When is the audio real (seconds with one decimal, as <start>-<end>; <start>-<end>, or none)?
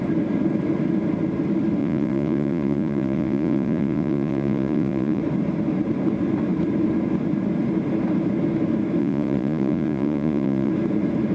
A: 0.0-1.8; 5.2-9.0; 10.7-11.3